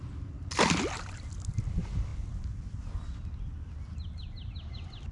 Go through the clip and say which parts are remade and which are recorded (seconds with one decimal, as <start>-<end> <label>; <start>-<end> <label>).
0.0-5.1 recorded